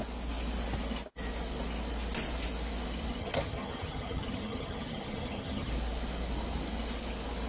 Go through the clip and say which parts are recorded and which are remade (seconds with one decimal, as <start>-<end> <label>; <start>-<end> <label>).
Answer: 0.0-3.2 recorded; 3.2-5.7 remade; 5.7-7.5 recorded